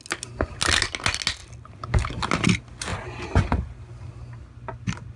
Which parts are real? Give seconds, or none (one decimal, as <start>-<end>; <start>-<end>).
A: 0.0-5.2